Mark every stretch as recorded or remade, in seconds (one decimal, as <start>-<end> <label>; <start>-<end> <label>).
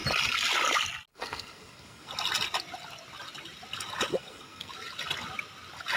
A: 0.0-1.1 recorded; 1.1-2.1 remade; 2.1-4.1 recorded; 4.1-4.7 remade; 4.7-6.0 recorded